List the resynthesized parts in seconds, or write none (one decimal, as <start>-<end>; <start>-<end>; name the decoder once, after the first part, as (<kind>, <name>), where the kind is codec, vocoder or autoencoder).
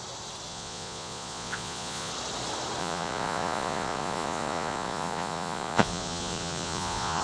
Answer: 0.5-2.1 (vocoder, Vocos); 2.8-7.2